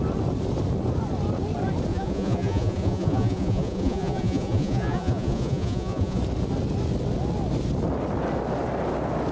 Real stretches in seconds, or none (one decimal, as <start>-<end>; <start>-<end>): 0.0-1.9; 6.2-9.3